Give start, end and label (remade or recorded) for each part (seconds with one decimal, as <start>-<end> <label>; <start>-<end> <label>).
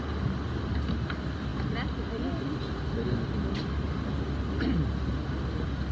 0.0-5.9 recorded